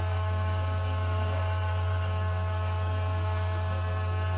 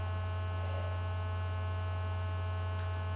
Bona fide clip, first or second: second